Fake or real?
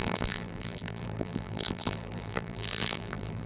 fake